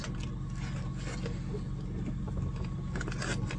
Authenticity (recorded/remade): recorded